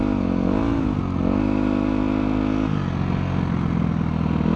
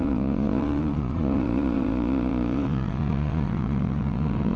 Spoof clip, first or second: second